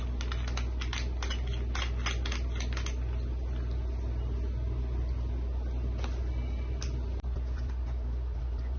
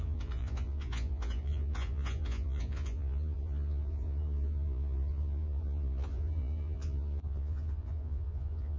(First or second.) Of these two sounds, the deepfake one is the second